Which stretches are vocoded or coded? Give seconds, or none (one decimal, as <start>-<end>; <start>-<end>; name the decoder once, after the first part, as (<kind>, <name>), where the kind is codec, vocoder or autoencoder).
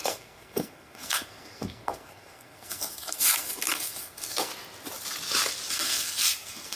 0.0-4.5 (codec, SNAC); 5.7-6.8